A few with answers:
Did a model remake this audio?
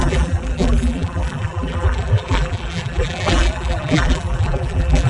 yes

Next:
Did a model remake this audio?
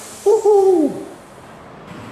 yes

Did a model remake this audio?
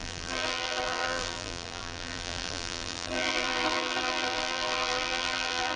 yes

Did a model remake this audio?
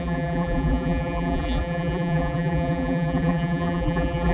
yes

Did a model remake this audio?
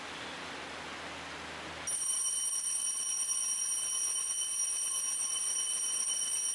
no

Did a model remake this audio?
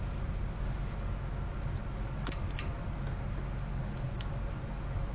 no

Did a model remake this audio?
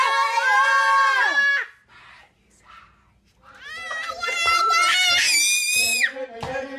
no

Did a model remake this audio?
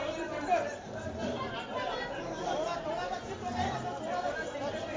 yes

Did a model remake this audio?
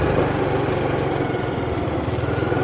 no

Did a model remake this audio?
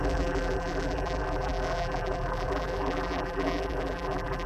yes